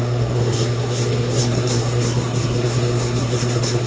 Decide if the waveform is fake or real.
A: fake